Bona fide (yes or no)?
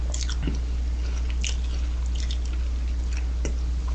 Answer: yes